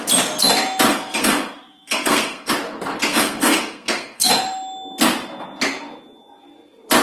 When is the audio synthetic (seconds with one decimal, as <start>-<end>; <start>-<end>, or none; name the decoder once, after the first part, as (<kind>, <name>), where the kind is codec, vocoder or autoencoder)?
0.9-2.5 (codec, SNAC); 3.1-4.3